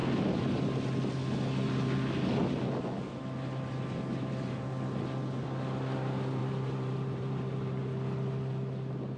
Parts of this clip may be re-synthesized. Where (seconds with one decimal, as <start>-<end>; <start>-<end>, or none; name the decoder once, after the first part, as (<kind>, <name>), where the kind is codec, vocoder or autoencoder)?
6.4-7.8 (vocoder, BigVGAN v2)